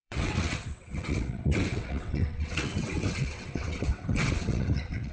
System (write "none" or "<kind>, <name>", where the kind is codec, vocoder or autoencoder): vocoder, WaveNeXt